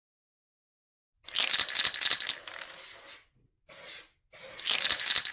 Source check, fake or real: real